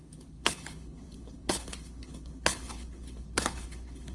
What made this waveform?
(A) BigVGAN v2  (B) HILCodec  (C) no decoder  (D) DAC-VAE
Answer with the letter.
B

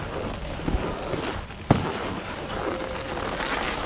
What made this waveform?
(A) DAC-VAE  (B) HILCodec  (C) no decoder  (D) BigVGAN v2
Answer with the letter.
C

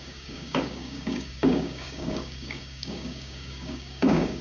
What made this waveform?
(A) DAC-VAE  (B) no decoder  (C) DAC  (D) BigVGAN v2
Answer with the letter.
C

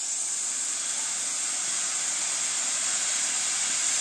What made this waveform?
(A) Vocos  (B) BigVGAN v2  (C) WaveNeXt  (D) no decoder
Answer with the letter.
D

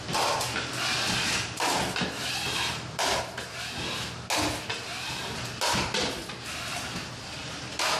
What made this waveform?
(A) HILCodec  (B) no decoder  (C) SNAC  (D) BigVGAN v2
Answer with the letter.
B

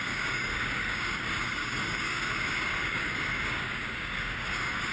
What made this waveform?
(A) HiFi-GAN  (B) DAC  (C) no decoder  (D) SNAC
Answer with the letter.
B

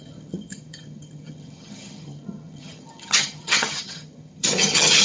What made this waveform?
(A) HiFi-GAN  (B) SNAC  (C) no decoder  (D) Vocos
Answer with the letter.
A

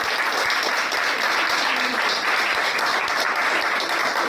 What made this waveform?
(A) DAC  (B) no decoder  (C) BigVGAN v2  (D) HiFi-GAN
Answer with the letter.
B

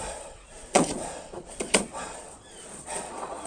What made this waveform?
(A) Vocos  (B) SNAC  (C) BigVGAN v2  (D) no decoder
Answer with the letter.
A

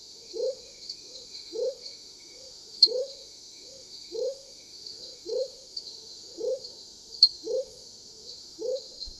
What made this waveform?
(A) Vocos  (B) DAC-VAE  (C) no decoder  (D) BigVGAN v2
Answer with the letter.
B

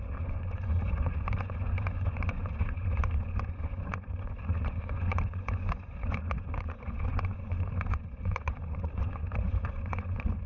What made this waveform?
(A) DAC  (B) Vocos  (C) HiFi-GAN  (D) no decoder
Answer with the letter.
B